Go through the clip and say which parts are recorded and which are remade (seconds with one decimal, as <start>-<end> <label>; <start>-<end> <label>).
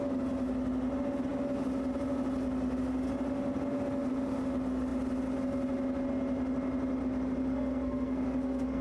0.0-7.4 recorded; 7.4-8.8 remade